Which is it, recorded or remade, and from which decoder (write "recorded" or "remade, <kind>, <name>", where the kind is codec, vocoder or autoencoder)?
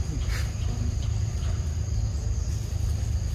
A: recorded